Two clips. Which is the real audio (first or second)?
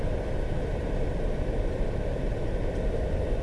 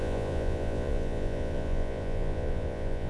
first